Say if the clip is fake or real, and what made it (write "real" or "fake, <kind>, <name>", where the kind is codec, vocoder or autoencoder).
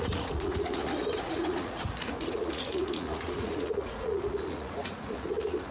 fake, vocoder, Vocos